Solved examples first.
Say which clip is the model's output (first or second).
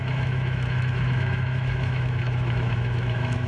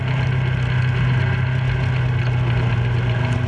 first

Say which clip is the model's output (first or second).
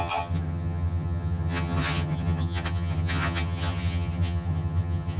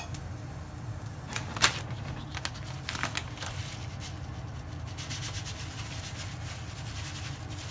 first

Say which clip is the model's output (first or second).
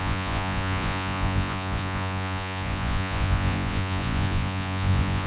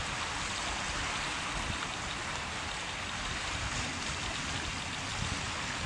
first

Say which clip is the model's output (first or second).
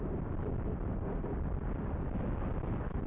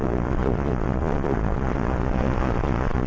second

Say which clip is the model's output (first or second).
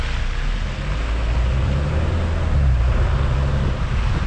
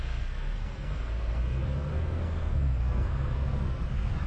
second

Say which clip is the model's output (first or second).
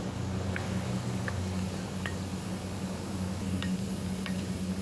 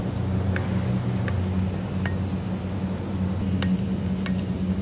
first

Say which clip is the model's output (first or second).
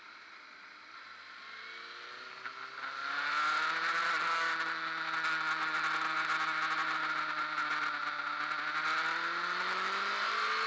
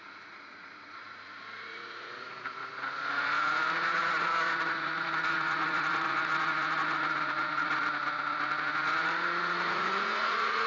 second